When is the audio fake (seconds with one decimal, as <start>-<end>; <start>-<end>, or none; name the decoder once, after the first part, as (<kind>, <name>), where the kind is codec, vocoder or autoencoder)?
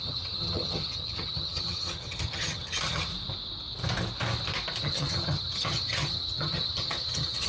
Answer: 0.0-3.1 (vocoder, HiFi-GAN); 4.8-7.5